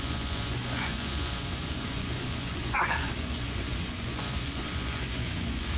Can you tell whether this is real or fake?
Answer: fake